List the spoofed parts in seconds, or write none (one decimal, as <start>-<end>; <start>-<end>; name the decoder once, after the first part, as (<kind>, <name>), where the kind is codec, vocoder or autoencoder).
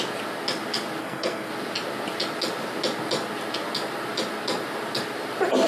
1.0-1.5 (codec, SNAC)